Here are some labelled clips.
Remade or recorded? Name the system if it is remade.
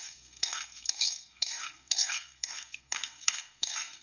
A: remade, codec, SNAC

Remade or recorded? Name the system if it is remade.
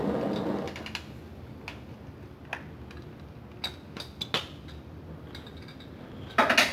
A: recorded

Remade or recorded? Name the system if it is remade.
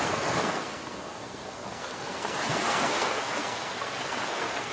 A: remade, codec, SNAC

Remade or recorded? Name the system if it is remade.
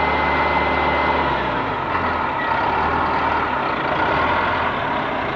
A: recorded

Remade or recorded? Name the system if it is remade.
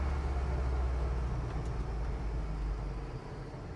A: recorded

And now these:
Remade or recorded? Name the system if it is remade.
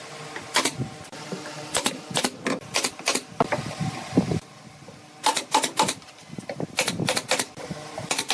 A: recorded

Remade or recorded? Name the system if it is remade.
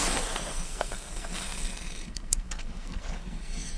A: remade, codec, SNAC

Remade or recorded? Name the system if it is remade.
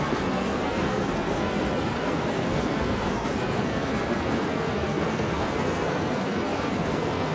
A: remade, codec, SNAC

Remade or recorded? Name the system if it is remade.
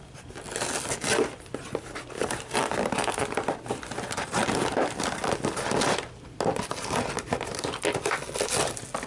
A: recorded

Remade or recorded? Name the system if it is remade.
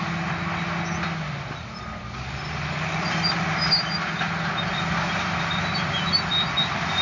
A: recorded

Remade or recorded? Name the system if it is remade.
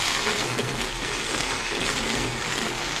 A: remade, codec, SNAC